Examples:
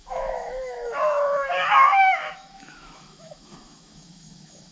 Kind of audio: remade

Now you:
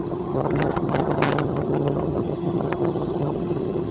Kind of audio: remade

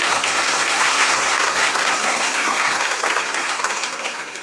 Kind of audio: remade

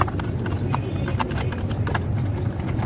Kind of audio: recorded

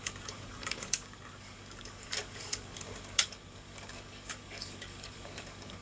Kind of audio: remade